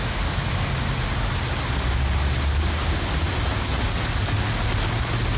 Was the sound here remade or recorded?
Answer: recorded